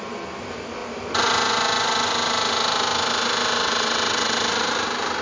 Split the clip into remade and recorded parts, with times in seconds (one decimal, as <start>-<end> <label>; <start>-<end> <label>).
0.0-3.6 recorded; 3.6-4.4 remade; 4.4-5.2 recorded